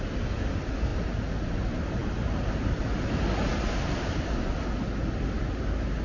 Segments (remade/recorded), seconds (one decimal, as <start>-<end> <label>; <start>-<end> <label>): 0.0-6.0 recorded

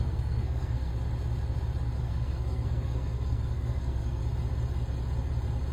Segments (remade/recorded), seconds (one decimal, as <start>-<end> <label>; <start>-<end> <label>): 0.0-0.9 remade; 0.9-2.0 recorded; 2.0-4.2 remade; 4.2-5.7 recorded